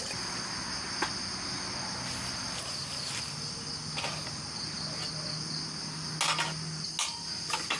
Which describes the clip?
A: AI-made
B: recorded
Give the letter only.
B